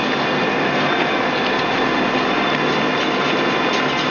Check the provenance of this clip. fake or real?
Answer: real